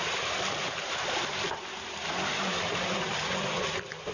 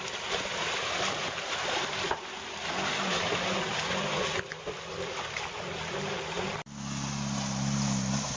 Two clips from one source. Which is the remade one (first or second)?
first